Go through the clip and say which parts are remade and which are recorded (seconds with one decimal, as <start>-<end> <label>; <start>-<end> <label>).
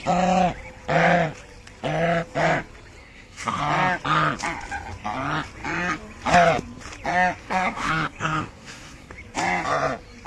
0.0-3.0 recorded; 3.0-3.6 remade; 3.6-7.4 recorded; 7.4-9.1 remade; 9.1-10.3 recorded